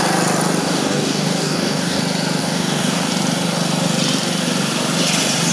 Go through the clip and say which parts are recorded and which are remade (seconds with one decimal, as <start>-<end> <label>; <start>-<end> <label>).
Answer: 0.0-0.6 recorded; 0.6-2.0 remade; 2.0-2.4 recorded; 2.4-3.1 remade; 3.1-5.5 recorded